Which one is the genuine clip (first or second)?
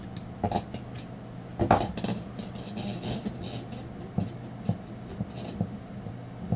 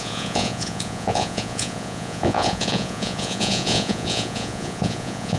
first